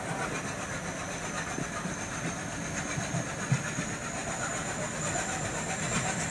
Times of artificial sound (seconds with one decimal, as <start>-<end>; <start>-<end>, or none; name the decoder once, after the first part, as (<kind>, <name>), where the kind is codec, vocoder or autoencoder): 4.2-5.0 (vocoder, BigVGAN v2)